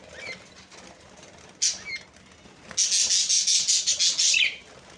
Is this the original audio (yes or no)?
yes